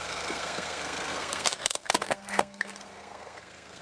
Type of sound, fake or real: fake